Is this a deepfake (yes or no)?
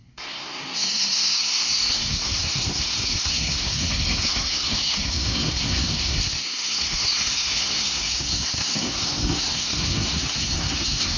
yes